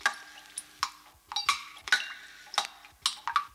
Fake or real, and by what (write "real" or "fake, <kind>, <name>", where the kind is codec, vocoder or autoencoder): real